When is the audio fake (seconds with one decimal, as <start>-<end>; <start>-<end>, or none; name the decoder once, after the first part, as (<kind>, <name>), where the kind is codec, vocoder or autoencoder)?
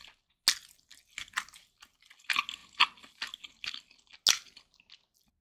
none